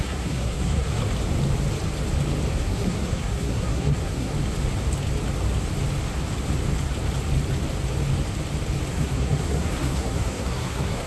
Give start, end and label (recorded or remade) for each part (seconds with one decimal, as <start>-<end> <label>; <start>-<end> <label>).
0.0-1.0 remade; 1.0-2.6 recorded; 2.6-4.3 remade; 4.3-8.9 recorded; 8.9-11.1 remade